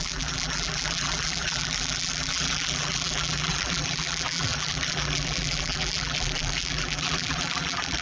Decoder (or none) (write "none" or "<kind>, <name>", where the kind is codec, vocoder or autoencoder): vocoder, BigVGAN v2